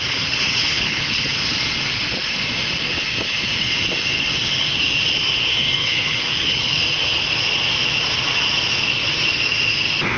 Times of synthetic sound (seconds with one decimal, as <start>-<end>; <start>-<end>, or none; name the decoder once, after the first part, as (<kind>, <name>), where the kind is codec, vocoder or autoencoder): 0.0-1.3 (codec, HILCodec); 5.8-6.8

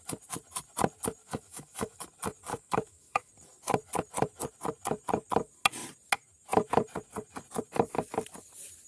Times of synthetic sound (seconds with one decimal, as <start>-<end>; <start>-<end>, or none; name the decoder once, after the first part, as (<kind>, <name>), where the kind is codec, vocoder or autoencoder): 1.2-2.0 (autoencoder, DAC-VAE); 2.5-3.3

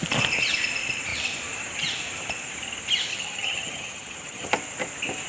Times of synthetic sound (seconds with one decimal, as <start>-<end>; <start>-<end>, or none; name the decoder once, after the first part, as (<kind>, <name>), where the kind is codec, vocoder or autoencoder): 3.1-4.5 (vocoder, HiFi-GAN)